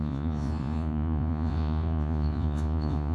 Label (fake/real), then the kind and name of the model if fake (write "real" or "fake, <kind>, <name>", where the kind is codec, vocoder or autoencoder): fake, vocoder, Vocos